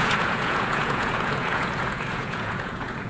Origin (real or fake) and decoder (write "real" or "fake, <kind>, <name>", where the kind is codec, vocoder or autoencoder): fake, vocoder, Vocos